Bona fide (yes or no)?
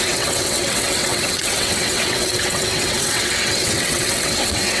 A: no